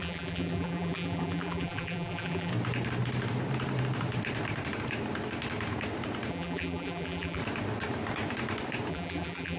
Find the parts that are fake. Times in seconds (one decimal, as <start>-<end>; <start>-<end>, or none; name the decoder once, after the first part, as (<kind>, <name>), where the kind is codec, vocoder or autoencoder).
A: 0.0-2.5 (vocoder, BigVGAN v2); 6.3-7.4; 8.9-9.6